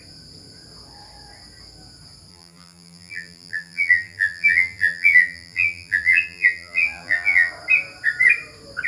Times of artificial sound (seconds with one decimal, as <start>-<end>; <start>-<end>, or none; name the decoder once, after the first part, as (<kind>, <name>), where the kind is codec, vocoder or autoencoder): 2.3-7.5 (vocoder, BigVGAN v2)